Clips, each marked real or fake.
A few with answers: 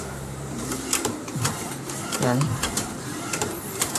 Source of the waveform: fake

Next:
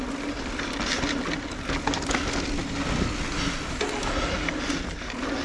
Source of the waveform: real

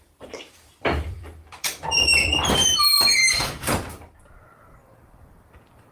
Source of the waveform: fake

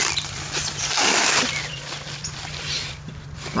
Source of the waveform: fake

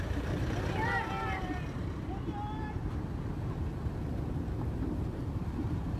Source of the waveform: fake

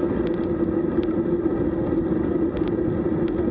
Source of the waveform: real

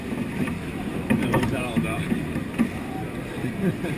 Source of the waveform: fake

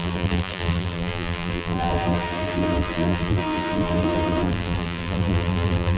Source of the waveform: fake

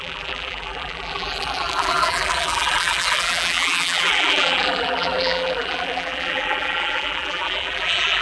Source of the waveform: fake